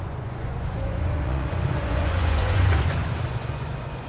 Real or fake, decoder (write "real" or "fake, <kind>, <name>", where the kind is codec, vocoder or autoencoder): fake, vocoder, Vocos